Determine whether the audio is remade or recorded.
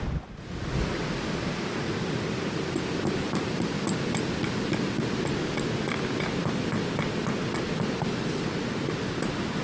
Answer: recorded